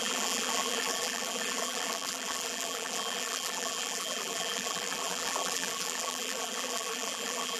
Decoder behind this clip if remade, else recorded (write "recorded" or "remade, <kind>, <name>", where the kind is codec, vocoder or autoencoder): remade, vocoder, BigVGAN v2